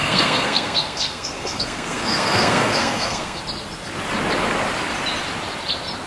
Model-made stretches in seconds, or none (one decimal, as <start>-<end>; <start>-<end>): 0.0-3.4